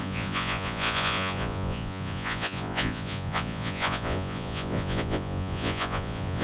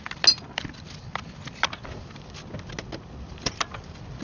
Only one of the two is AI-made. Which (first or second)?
first